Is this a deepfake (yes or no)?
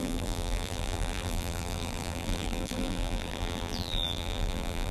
yes